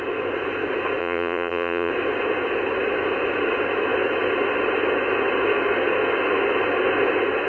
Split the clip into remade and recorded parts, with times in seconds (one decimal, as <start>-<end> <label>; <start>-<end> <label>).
0.0-1.0 recorded; 1.0-1.9 remade; 1.9-7.5 recorded